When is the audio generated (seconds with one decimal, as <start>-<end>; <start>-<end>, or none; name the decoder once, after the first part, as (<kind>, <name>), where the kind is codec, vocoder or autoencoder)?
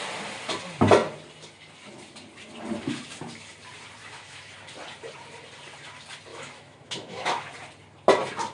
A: 4.0-4.5 (autoencoder, DAC-VAE); 6.3-7.5